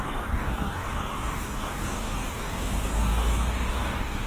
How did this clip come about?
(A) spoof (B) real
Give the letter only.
A